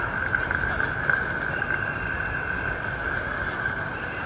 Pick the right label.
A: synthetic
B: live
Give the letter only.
B